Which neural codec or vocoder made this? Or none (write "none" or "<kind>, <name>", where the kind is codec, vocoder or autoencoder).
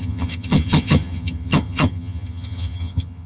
vocoder, HiFi-GAN